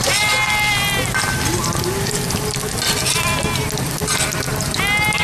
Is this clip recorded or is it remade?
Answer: recorded